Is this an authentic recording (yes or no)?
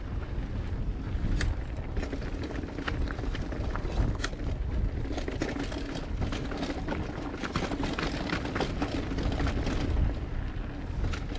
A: yes